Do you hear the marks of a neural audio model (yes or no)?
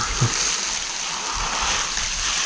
no